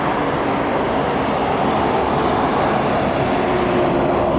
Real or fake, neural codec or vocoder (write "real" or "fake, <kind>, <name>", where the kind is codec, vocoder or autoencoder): real